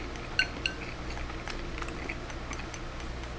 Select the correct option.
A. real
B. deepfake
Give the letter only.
A